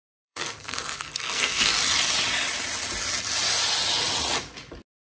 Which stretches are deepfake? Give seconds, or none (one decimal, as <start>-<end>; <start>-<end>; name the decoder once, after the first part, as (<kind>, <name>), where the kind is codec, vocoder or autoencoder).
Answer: 0.0-1.7 (codec, SNAC)